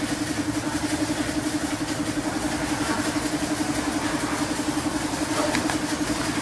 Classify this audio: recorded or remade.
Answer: recorded